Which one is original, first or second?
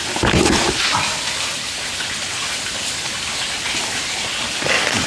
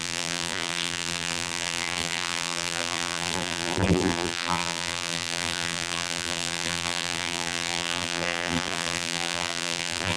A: first